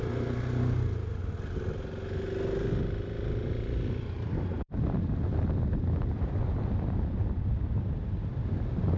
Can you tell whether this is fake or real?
real